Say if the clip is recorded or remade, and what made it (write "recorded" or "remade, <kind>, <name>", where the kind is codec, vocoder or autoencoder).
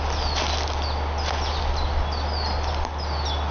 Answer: recorded